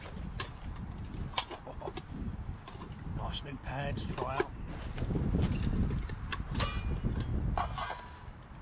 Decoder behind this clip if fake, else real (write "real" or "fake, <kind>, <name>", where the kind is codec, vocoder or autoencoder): real